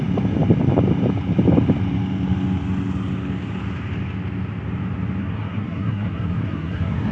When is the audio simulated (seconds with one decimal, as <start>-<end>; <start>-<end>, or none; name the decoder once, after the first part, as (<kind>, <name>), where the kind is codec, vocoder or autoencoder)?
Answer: 5.2-7.1 (codec, SNAC)